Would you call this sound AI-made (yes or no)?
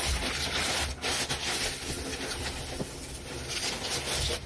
no